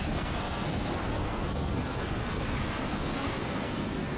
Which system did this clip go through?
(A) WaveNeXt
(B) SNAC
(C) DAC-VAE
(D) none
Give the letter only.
B